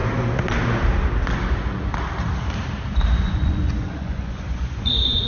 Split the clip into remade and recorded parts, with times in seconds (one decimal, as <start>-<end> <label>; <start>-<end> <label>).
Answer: 0.0-3.2 recorded; 3.2-5.3 remade